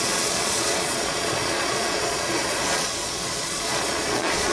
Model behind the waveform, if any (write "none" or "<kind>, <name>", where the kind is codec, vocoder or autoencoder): vocoder, Vocos